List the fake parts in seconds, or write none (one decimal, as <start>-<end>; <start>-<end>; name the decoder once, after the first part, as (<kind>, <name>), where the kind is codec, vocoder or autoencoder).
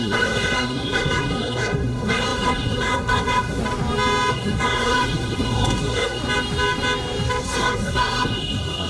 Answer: 0.0-3.6 (codec, SNAC); 4.3-6.2; 7.4-8.9